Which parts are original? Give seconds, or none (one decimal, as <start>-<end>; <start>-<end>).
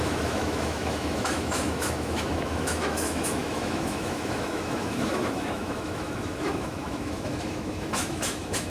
none